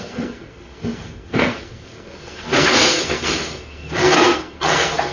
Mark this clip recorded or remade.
remade